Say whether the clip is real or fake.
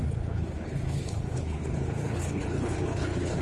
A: fake